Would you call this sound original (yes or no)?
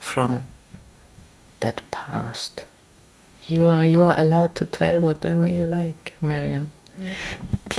no